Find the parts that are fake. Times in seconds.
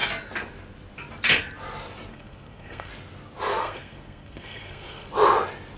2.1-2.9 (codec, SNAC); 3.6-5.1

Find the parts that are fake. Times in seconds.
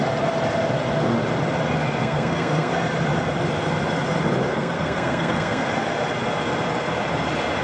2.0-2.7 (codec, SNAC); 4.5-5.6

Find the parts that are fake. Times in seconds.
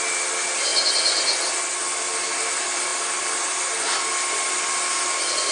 none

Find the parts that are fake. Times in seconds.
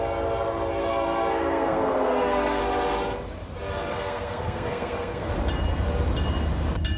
0.8-2.6 (codec, SNAC); 3.9-5.3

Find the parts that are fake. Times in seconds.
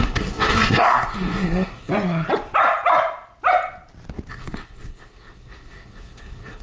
0.0-1.9 (codec, SNAC); 4.3-6.6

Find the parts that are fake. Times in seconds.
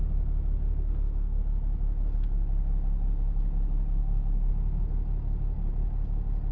0.8-1.4 (codec, SNAC); 4.0-4.5